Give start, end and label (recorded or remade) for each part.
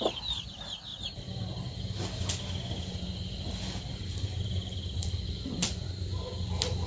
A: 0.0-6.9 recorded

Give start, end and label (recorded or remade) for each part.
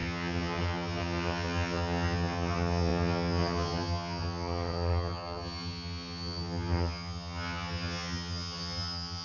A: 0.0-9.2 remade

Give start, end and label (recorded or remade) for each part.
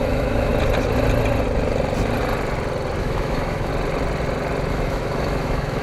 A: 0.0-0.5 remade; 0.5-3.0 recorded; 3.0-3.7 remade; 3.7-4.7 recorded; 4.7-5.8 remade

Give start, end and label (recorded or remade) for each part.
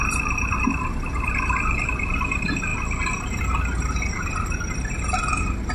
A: 0.0-5.7 recorded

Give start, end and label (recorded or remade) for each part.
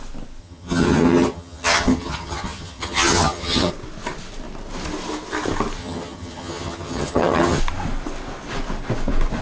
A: 0.0-0.4 recorded; 0.4-3.7 remade; 3.7-5.8 recorded; 5.8-7.6 remade; 7.6-9.4 recorded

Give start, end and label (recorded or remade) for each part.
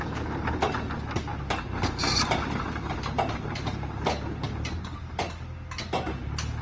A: 0.0-1.3 recorded; 1.3-1.8 remade; 1.8-6.6 recorded